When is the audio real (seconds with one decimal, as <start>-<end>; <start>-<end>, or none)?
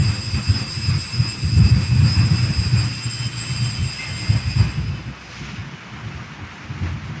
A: 0.0-7.2